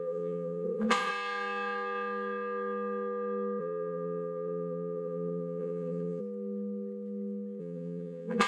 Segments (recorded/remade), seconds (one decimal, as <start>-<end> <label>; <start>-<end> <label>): 0.0-1.1 remade; 1.1-3.6 recorded; 3.6-6.2 remade; 6.2-7.6 recorded; 7.6-8.5 remade